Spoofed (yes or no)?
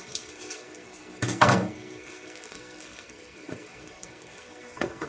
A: yes